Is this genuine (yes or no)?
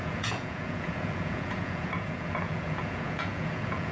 no